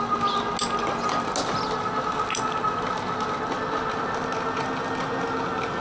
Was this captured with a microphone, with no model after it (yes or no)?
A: yes